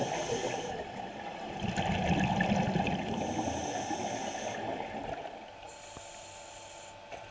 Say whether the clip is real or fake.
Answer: real